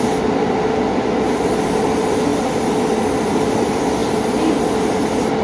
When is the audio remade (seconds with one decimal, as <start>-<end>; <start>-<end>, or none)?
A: 0.0-2.3; 3.2-4.0